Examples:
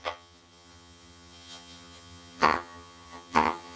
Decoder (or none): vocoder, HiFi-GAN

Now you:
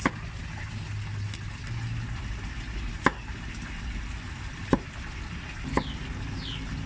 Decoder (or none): none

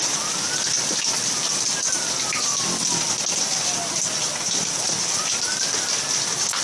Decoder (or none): none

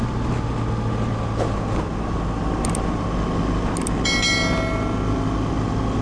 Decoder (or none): none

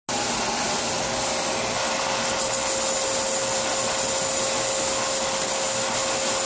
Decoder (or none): none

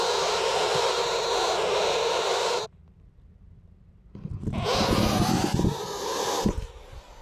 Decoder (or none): none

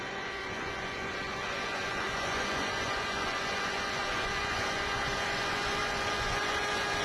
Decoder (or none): vocoder, Vocos